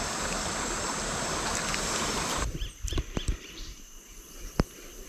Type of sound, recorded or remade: remade